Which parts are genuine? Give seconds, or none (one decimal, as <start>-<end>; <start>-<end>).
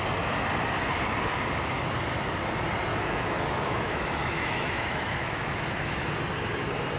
0.0-2.9; 6.0-7.0